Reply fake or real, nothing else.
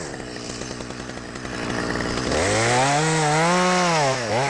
real